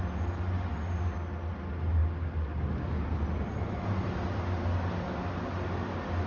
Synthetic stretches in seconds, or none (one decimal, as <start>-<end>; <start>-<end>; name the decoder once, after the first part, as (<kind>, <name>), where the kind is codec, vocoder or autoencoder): none